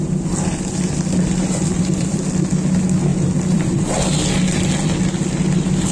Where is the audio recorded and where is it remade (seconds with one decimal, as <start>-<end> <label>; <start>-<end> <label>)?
0.0-1.4 recorded; 1.4-2.2 remade; 2.2-3.1 recorded; 3.1-3.9 remade; 3.9-5.9 recorded